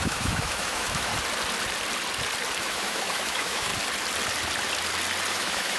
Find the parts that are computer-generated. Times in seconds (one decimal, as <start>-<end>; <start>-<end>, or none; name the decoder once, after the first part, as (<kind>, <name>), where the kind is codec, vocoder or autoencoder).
0.0-1.1 (autoencoder, DAC-VAE); 2.6-3.7; 5.3-5.8